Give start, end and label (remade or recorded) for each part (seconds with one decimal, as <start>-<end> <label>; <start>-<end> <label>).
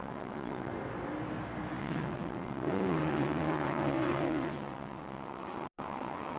0.0-0.7 remade; 0.7-1.8 recorded; 1.8-6.4 remade